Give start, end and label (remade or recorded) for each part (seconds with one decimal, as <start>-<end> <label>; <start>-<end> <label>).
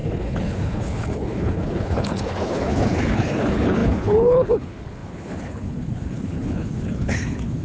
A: 0.0-7.6 remade